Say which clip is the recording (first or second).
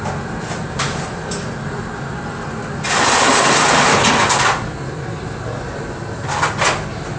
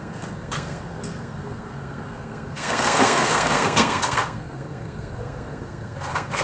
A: first